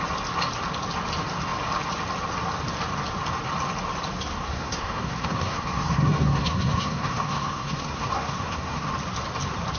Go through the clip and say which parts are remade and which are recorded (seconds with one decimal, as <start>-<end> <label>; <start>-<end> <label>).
0.0-4.3 recorded; 4.3-8.9 remade; 8.9-9.8 recorded